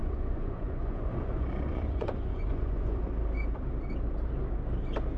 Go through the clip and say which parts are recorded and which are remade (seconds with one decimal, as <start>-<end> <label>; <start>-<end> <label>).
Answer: 0.0-3.1 remade; 3.1-5.2 recorded

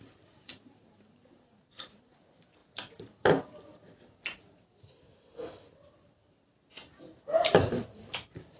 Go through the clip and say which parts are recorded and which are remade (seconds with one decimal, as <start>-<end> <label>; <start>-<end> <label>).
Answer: 0.0-2.6 remade; 2.6-7.7 recorded; 7.7-8.6 remade